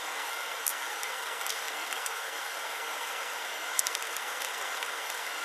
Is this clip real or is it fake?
fake